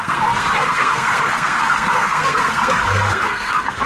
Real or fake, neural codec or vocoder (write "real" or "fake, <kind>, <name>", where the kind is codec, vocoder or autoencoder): fake, codec, SNAC